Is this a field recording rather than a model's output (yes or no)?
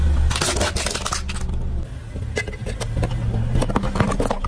yes